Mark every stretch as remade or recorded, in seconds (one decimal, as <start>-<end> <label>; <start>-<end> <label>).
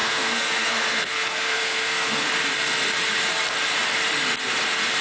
0.0-2.3 remade; 2.3-5.0 recorded